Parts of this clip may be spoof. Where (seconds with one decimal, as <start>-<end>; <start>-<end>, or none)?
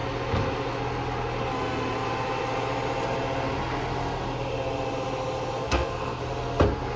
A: 5.6-6.2